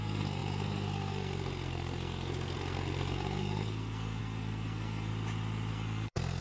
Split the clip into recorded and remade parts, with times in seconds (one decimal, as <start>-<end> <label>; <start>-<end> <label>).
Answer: 0.0-5.1 remade; 5.1-5.7 recorded; 5.7-6.4 remade